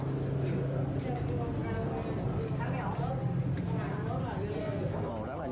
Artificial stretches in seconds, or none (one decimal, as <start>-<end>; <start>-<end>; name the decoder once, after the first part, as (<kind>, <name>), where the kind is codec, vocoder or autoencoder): 4.6-5.1 (codec, SNAC)